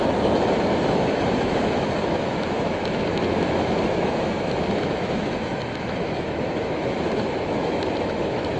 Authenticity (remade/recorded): remade